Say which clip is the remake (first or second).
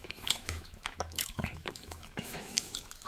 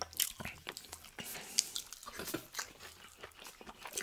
first